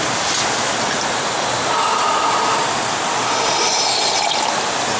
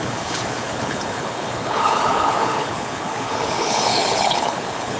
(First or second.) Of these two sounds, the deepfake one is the second